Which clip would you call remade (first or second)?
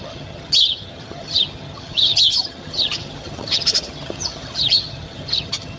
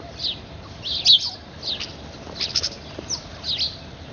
first